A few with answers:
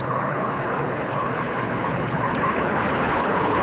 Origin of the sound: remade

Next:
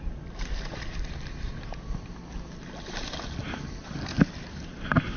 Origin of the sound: recorded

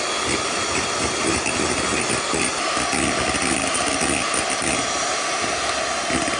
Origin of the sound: recorded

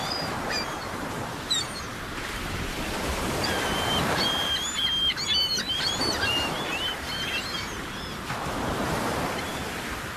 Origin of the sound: remade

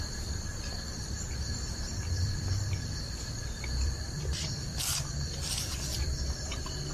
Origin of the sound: remade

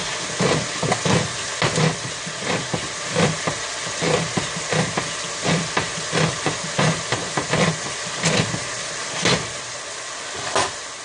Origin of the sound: recorded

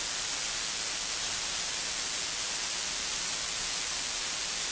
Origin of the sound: recorded